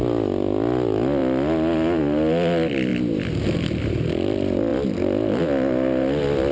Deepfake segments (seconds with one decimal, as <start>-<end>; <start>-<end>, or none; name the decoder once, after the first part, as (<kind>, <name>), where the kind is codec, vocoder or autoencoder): none